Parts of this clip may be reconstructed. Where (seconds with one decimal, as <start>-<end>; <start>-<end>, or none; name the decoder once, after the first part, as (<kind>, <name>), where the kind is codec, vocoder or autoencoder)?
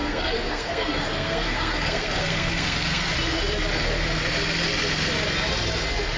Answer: 0.0-3.1 (codec, SNAC)